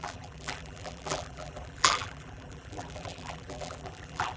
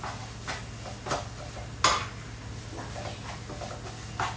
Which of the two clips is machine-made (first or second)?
first